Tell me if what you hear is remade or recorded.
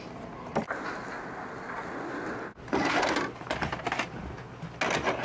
recorded